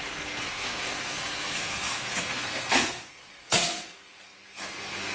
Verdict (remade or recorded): remade